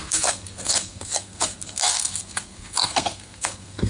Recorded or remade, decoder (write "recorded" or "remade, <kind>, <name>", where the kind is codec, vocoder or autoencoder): remade, codec, SNAC